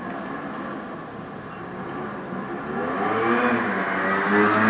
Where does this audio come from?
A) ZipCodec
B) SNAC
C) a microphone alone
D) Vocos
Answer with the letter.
C